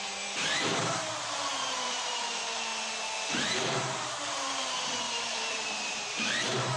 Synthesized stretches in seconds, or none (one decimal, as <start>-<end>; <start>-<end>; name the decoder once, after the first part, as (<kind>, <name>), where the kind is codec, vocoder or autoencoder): 0.0-2.7 (vocoder, BigVGAN v2); 3.3-6.8